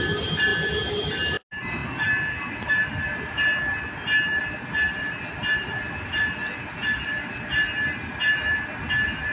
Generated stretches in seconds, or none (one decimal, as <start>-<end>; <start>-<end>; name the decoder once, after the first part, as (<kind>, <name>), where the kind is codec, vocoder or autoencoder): none